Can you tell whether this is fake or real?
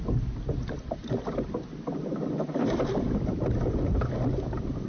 real